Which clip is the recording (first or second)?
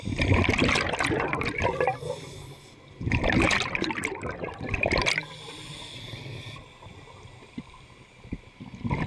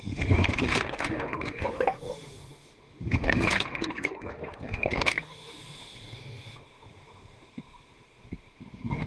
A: first